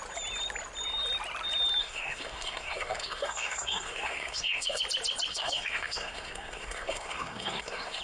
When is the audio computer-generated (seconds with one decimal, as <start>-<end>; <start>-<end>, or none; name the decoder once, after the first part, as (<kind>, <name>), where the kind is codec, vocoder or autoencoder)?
1.8-4.8 (codec, SNAC); 5.3-8.0